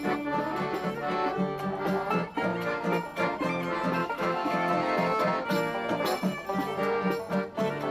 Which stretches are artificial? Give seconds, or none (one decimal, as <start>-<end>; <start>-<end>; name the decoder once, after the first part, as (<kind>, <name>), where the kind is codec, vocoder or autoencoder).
4.0-4.7 (autoencoder, DAC-VAE)